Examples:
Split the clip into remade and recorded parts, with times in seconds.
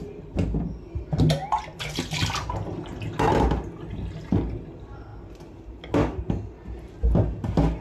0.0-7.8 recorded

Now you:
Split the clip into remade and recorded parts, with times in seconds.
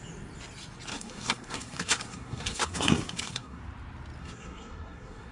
0.0-0.9 recorded; 0.9-3.6 remade; 3.6-4.2 recorded; 4.2-5.3 remade